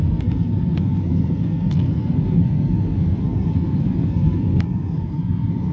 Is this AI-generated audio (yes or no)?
yes